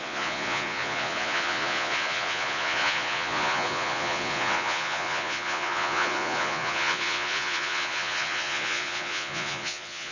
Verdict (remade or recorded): remade